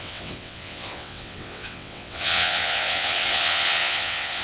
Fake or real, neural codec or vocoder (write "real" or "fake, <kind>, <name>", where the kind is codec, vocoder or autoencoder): fake, vocoder, WaveNeXt